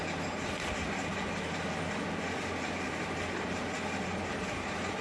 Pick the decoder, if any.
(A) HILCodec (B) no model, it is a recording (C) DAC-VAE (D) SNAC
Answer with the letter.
B